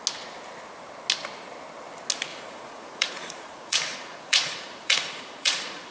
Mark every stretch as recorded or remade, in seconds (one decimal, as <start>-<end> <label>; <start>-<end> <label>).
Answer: 0.0-2.3 recorded; 2.3-5.9 remade